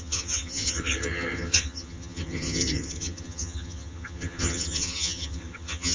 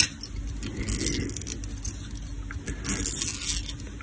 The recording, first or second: second